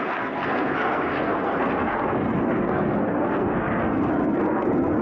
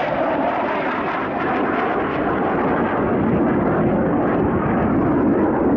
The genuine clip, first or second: second